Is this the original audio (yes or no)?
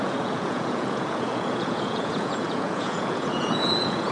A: no